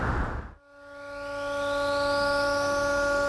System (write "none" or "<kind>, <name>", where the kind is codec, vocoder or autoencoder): none